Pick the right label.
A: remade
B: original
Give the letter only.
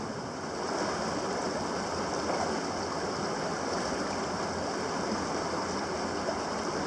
B